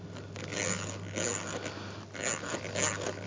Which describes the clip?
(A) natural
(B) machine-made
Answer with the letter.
A